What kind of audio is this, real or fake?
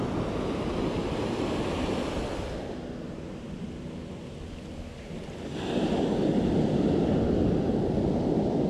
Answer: real